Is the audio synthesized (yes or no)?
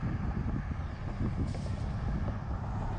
no